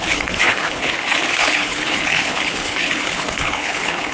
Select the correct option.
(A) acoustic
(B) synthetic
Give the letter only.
B